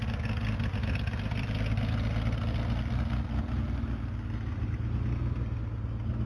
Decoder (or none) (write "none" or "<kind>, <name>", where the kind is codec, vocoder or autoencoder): none